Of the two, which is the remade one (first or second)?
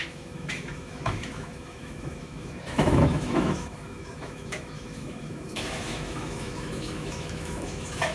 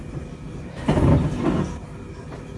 first